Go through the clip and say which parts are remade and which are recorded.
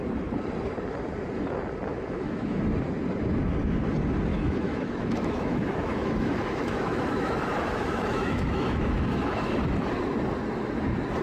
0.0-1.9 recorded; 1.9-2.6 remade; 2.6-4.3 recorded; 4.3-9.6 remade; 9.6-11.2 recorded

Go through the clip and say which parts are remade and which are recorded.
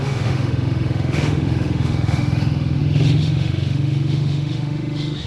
0.0-5.3 remade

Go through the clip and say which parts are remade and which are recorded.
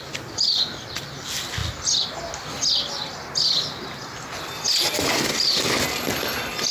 0.0-6.7 recorded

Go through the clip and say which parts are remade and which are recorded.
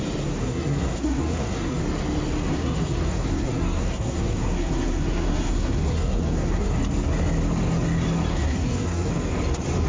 0.0-0.4 recorded; 0.4-1.8 remade; 1.8-2.5 recorded; 2.5-6.8 remade; 6.8-8.3 recorded; 8.3-9.1 remade; 9.1-9.9 recorded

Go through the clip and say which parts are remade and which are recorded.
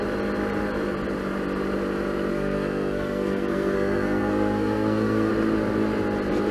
0.0-2.3 recorded; 2.3-5.3 remade; 5.3-6.5 recorded